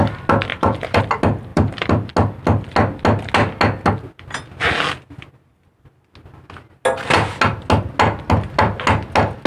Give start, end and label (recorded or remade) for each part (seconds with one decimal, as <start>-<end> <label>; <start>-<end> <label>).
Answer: 0.0-0.5 recorded; 0.5-1.0 remade; 1.0-1.5 recorded; 1.5-2.1 remade; 2.1-9.5 recorded